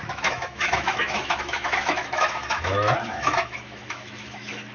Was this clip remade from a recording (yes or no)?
yes